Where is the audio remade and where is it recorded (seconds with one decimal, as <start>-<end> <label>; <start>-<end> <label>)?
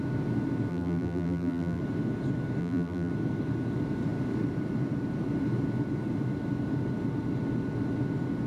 0.0-0.7 recorded; 0.7-1.8 remade; 1.8-2.6 recorded; 2.6-3.1 remade; 3.1-8.5 recorded